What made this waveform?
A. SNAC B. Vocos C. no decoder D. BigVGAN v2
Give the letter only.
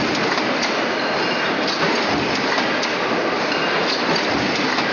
C